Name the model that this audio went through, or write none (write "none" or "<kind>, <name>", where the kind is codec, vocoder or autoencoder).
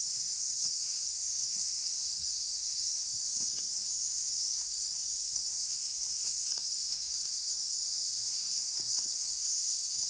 codec, SNAC